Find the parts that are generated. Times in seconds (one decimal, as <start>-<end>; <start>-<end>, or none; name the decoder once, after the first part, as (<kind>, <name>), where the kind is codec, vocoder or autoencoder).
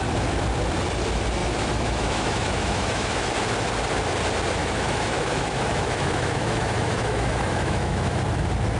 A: 1.4-3.3 (autoencoder, DAC-VAE); 4.6-8.2